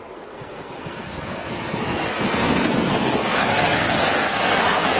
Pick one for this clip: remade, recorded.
remade